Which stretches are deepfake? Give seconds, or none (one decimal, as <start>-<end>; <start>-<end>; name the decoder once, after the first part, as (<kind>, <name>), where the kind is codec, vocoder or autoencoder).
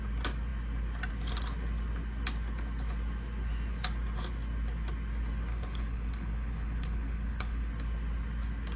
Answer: 5.5-7.7 (codec, HILCodec)